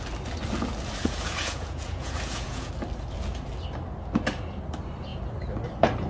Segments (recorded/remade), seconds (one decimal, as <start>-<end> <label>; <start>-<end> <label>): 0.0-1.0 recorded; 1.0-2.7 remade; 2.7-6.1 recorded